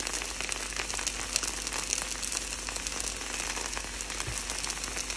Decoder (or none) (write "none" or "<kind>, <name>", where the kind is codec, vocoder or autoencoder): none